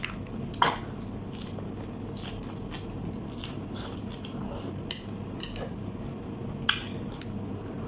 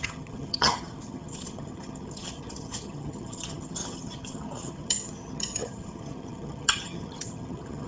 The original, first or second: first